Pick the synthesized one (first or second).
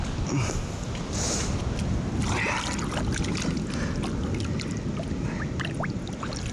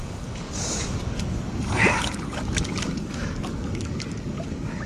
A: second